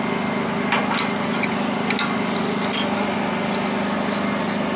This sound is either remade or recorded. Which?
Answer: recorded